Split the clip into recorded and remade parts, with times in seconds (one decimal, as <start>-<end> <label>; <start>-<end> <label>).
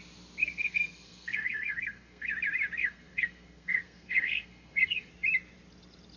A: 0.0-0.4 recorded; 0.4-2.3 remade; 2.3-2.8 recorded; 2.8-5.1 remade; 5.1-6.2 recorded